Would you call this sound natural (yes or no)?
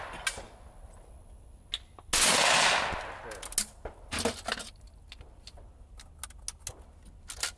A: yes